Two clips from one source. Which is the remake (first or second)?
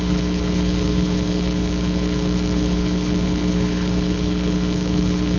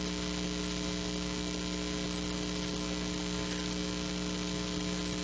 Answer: first